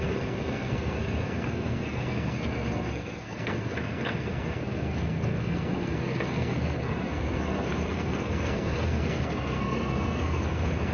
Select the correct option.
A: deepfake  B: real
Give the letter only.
A